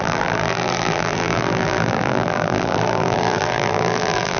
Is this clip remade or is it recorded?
remade